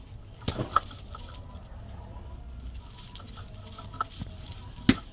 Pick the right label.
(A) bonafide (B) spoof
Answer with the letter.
A